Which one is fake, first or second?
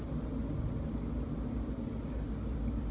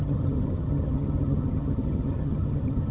second